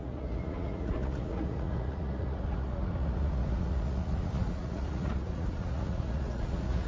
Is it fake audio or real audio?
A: fake